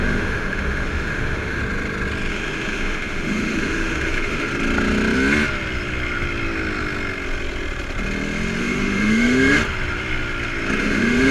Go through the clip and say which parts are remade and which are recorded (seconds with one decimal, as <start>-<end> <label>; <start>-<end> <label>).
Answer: 0.0-1.6 remade; 1.6-2.3 recorded; 2.3-4.5 remade; 4.5-8.6 recorded; 8.6-9.6 remade; 9.6-10.8 recorded; 10.8-11.3 remade

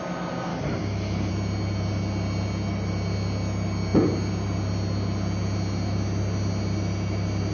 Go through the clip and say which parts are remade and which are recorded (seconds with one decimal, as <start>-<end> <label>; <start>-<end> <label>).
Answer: 0.0-0.5 recorded; 0.5-1.3 remade; 1.3-7.5 recorded

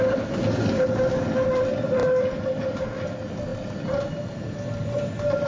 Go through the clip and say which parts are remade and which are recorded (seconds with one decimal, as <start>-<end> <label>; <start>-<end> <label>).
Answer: 0.0-5.5 recorded

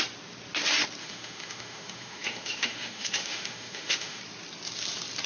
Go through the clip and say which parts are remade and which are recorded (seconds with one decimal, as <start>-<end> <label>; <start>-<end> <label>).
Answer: 0.0-1.0 recorded; 1.0-4.2 remade; 4.2-5.3 recorded

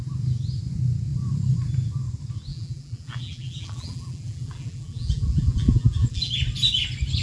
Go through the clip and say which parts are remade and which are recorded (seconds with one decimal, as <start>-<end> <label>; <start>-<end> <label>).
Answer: 0.0-2.5 recorded; 2.5-6.3 remade; 6.3-7.2 recorded

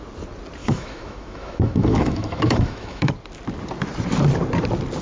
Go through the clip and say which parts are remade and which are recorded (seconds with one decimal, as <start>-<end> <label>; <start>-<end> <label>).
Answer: 0.0-0.6 recorded; 0.6-3.1 remade; 3.1-5.0 recorded

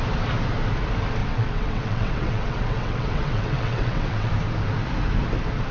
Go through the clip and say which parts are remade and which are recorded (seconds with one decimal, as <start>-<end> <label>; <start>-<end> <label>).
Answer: 0.0-1.2 recorded; 1.2-4.3 remade; 4.3-5.7 recorded

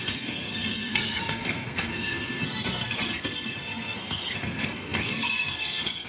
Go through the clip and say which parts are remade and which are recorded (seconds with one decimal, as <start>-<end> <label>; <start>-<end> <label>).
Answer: 0.0-6.1 remade